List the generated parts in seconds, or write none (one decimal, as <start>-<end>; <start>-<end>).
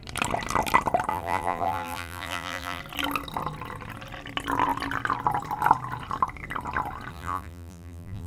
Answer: 1.1-2.8; 7.1-8.3